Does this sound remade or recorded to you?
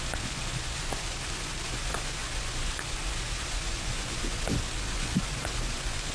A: remade